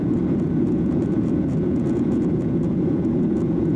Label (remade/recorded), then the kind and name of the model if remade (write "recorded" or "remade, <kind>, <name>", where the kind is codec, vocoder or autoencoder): remade, vocoder, Vocos